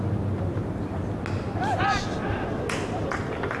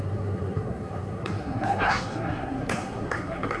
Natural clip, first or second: first